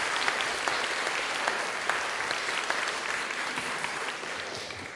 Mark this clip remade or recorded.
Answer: remade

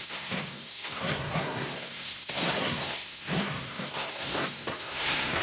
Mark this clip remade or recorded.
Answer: remade